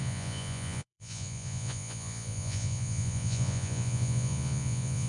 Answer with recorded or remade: remade